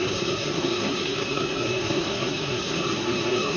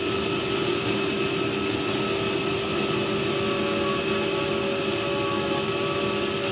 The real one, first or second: second